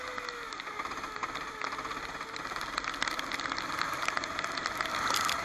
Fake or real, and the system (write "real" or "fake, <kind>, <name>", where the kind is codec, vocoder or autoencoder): real